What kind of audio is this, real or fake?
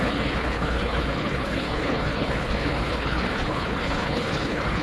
fake